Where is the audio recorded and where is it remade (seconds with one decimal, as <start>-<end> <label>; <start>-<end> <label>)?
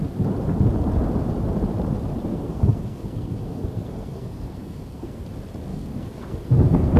0.0-2.3 recorded; 2.3-5.2 remade; 5.2-5.7 recorded; 5.7-7.0 remade